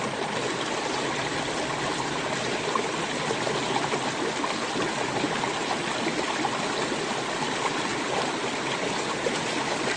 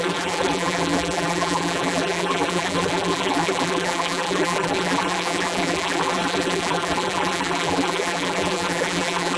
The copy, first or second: second